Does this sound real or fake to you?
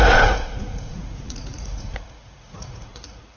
fake